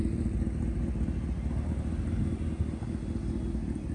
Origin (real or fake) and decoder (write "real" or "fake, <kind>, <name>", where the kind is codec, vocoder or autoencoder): real